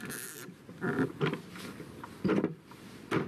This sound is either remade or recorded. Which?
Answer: recorded